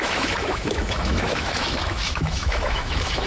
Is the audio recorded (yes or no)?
no